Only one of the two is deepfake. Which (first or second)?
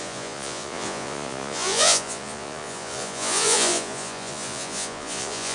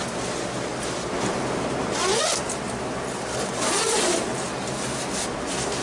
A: first